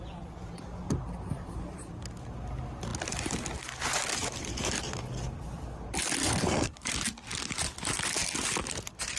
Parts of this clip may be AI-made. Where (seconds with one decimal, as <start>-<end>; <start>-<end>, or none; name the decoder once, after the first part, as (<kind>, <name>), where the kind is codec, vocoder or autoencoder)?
6.2-6.9 (codec, SNAC)